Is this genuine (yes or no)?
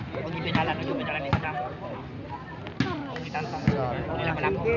yes